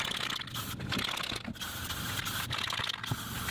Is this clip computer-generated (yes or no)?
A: no